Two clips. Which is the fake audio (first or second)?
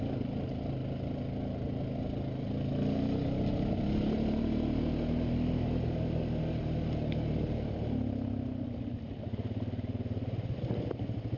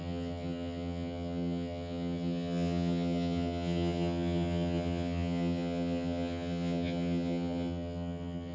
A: second